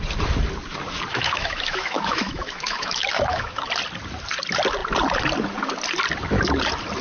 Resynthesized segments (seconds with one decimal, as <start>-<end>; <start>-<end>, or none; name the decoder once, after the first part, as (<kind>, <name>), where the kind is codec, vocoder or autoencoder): 1.1-3.6 (autoencoder, DAC-VAE)